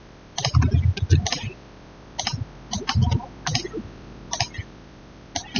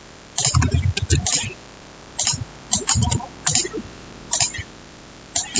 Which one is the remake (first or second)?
second